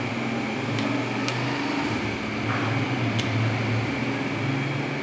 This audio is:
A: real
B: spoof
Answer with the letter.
A